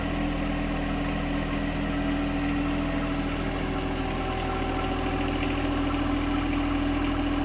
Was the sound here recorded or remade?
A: recorded